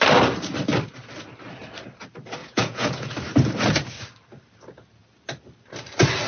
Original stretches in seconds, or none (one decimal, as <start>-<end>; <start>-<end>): 0.0-2.4; 3.1-6.3